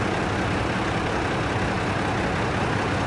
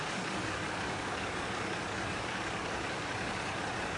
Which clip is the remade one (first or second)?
second